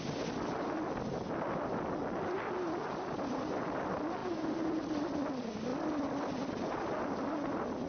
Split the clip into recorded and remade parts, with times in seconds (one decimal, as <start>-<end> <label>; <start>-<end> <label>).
0.0-7.9 recorded